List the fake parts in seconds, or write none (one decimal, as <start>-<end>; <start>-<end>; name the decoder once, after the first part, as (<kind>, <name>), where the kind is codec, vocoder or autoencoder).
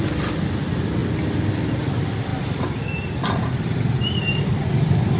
0.0-5.2 (vocoder, BigVGAN v2)